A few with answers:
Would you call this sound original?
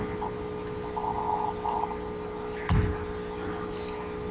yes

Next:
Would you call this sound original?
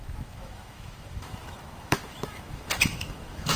no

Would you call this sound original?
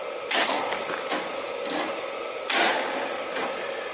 yes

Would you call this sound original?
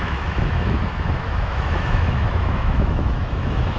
no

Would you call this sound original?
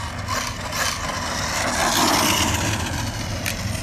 yes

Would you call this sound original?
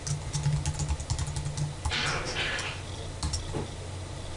yes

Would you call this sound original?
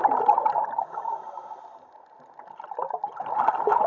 yes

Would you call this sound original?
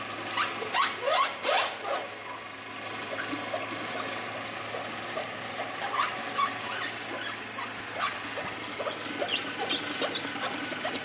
yes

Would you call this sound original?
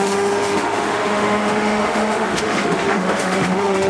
no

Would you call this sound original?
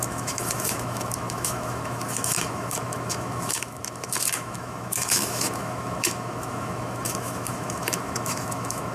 no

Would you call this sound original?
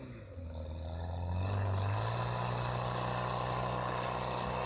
yes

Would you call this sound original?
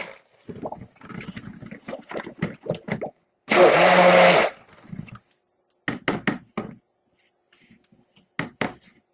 yes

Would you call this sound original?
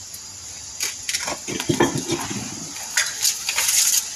yes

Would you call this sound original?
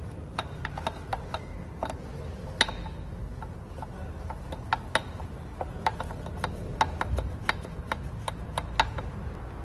yes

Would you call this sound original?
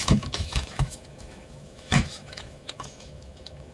no